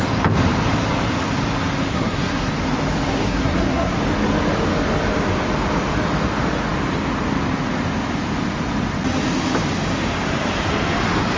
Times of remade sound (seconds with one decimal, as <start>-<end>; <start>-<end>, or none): 1.9-2.5; 3.1-4.0